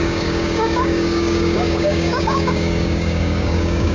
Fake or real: fake